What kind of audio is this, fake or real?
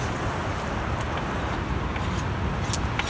real